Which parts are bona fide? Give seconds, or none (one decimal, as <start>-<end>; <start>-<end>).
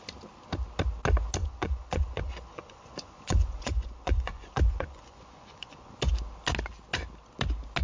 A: 0.0-1.4; 6.0-7.8